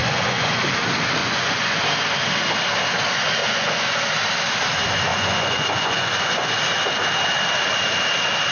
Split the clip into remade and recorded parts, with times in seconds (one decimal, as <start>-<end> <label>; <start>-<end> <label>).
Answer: 0.0-0.6 remade; 0.6-1.2 recorded; 1.2-1.8 remade; 1.8-3.4 recorded; 3.4-4.0 remade; 4.0-5.1 recorded; 5.1-6.5 remade; 6.5-8.5 recorded